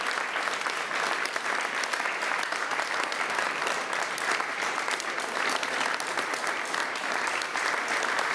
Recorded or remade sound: remade